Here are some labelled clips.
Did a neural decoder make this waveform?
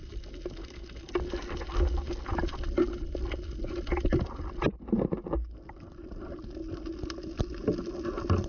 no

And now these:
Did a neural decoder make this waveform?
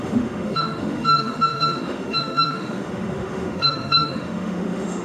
yes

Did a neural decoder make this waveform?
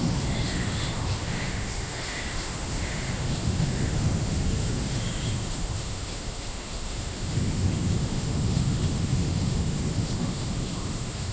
yes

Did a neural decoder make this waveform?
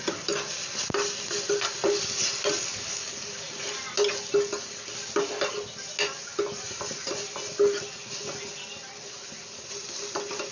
no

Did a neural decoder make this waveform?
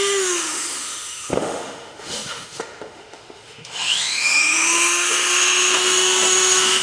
yes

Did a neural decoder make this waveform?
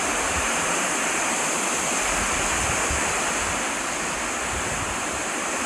no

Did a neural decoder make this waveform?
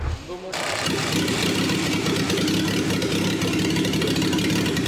no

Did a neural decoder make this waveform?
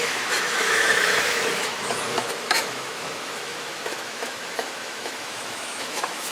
yes